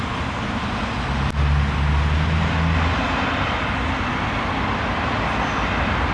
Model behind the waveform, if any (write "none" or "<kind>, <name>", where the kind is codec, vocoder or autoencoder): none